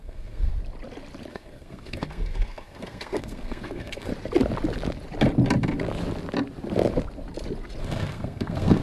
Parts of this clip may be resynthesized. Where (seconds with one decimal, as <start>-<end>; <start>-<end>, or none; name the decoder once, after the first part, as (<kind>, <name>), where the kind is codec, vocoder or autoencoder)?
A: 0.0-0.5 (codec, SNAC); 1.3-4.1; 7.8-8.8